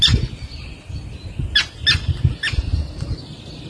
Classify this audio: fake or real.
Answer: real